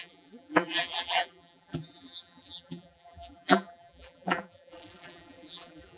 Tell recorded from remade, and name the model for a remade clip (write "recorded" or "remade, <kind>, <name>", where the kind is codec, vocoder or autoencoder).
remade, vocoder, BigVGAN v2